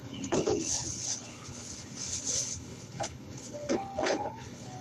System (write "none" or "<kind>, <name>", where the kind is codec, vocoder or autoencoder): codec, HILCodec